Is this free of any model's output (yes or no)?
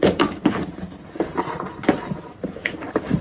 no